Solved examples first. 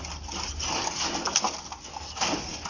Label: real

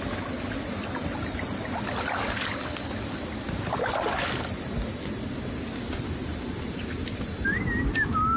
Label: real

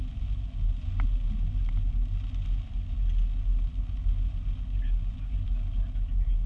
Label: real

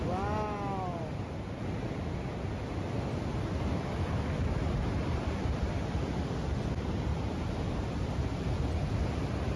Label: real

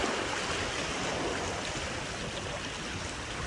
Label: real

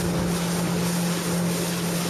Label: real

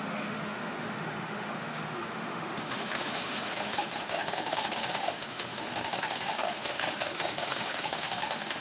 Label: fake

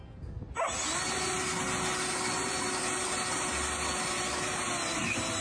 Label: real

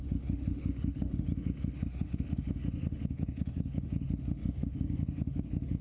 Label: fake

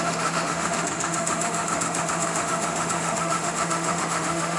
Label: fake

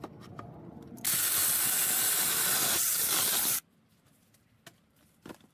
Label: real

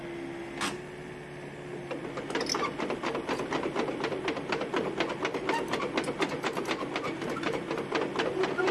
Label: real